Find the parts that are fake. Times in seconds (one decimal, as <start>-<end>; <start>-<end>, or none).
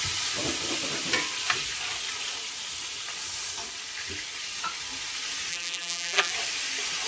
5.5-6.3